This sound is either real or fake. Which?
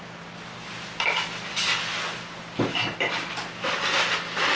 real